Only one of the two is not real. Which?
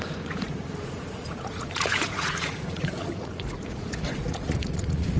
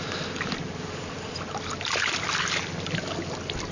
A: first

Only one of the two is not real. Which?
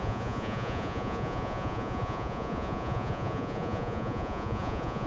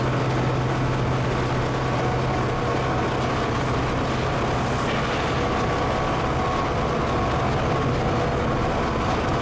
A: first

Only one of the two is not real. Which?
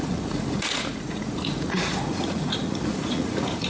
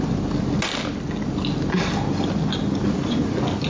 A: first